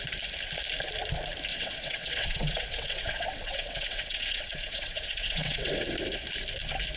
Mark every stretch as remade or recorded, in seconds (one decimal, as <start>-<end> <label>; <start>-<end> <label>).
0.0-1.5 recorded; 1.5-5.7 remade; 5.7-7.0 recorded